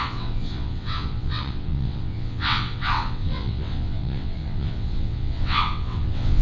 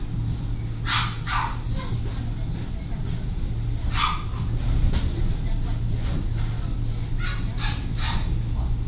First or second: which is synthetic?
first